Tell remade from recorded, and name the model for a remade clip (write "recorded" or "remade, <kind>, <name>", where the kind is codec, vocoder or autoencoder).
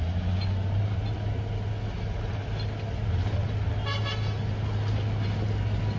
recorded